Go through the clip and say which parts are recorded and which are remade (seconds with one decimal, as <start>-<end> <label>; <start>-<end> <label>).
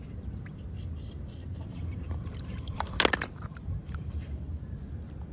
0.0-1.7 recorded; 1.7-3.0 remade; 3.0-3.8 recorded; 3.8-4.6 remade; 4.6-5.3 recorded